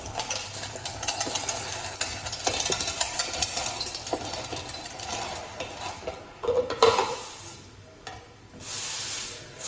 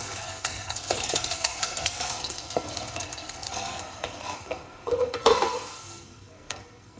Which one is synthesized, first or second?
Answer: second